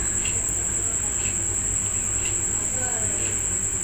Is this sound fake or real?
real